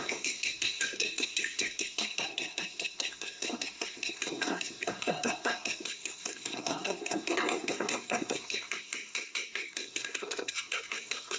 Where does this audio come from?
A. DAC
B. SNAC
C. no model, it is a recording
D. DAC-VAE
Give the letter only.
B